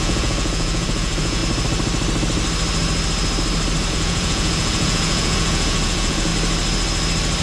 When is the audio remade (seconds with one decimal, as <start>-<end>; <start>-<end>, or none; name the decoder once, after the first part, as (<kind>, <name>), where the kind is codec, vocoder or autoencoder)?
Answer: 0.0-1.4 (vocoder, Vocos); 3.9-6.3

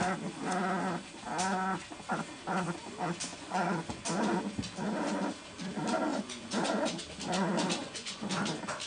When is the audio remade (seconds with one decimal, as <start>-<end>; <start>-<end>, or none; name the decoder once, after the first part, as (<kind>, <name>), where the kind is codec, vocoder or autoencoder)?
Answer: 3.3-4.0 (vocoder, Vocos); 6.1-7.0; 7.8-8.3